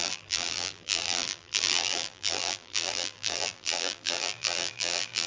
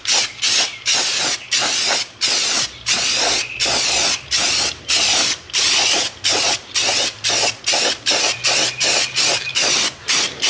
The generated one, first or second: first